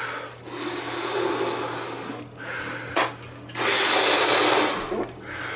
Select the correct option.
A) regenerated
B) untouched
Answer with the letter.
B